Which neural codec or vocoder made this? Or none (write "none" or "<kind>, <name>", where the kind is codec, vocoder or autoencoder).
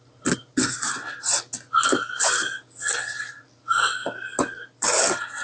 none